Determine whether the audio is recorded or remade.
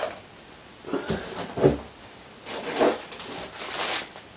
recorded